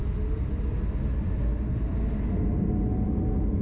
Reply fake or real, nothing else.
real